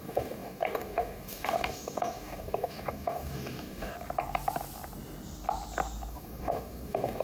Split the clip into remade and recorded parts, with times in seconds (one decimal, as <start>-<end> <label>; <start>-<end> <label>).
0.0-3.9 remade; 3.9-6.1 recorded; 6.1-7.2 remade